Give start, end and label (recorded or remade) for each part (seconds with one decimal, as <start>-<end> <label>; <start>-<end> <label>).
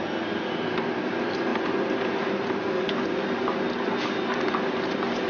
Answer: 0.0-1.1 recorded; 1.1-1.5 remade; 1.5-4.7 recorded; 4.7-5.3 remade